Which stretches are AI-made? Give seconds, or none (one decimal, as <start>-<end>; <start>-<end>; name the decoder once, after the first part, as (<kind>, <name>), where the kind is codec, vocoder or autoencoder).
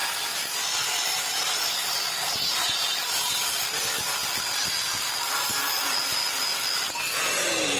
0.0-3.7 (vocoder, BigVGAN v2)